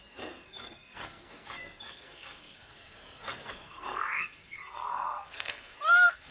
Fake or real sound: fake